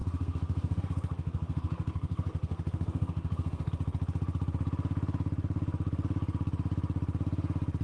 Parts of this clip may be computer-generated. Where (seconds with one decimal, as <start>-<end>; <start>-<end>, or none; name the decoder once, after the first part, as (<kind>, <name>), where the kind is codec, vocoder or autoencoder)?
0.0-3.7 (codec, SNAC)

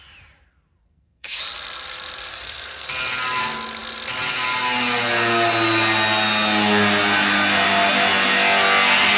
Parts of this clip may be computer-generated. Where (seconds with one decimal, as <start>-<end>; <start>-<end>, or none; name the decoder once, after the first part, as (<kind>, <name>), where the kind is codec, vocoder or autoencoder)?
0.8-1.4 (codec, SNAC); 2.3-2.9